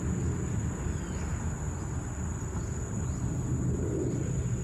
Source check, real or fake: real